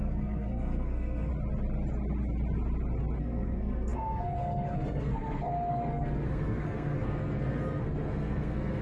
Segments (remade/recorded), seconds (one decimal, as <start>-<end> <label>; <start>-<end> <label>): 0.0-1.3 remade; 1.3-3.2 recorded; 3.2-8.8 remade

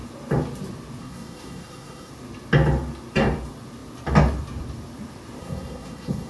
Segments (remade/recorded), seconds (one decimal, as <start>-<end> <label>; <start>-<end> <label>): 0.0-1.0 recorded; 1.0-2.1 remade; 2.1-5.4 recorded; 5.4-6.3 remade